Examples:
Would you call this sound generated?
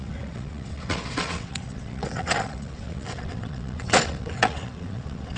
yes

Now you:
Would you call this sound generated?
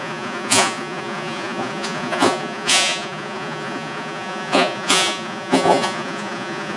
yes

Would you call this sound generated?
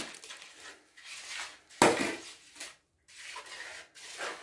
no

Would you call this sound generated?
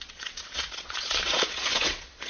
yes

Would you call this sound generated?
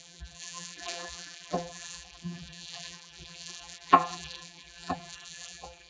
yes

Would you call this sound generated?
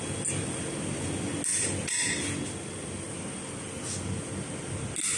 no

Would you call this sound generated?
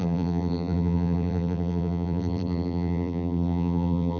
yes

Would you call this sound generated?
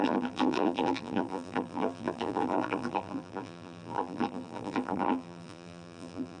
yes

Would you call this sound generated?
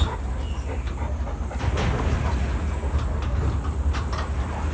no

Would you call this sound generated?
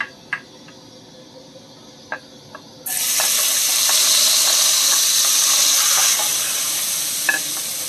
no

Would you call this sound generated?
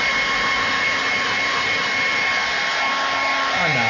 no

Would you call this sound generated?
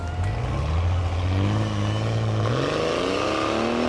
no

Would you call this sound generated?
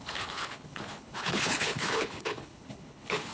yes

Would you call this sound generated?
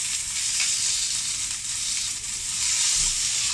no